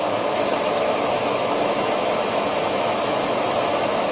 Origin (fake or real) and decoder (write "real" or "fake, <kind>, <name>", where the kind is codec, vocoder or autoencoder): fake, autoencoder, DAC-VAE